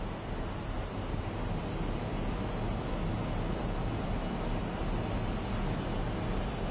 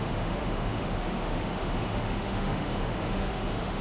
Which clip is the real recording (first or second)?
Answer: first